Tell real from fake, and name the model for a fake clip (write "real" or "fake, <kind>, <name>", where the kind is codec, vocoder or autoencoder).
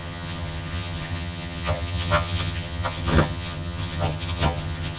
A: fake, vocoder, HiFi-GAN